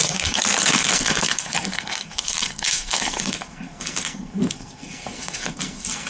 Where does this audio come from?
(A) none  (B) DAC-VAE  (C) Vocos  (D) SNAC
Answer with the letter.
D